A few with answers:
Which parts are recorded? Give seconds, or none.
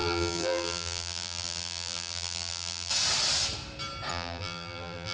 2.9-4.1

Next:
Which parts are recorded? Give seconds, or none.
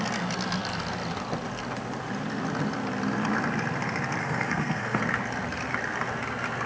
0.0-4.2; 5.0-6.7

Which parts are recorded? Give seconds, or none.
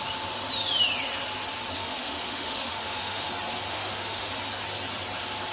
0.0-1.8; 3.3-3.7; 4.3-5.5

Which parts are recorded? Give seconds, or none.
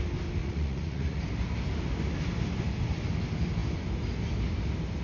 0.0-0.4; 1.2-5.0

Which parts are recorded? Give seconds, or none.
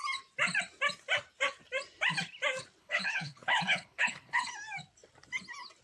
0.0-2.8; 4.5-5.8